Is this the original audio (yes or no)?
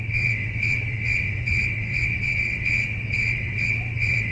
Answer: no